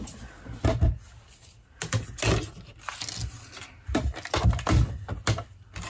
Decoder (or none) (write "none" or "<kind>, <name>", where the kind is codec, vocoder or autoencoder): none